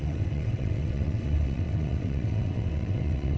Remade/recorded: remade